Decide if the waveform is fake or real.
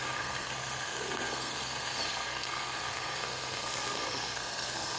fake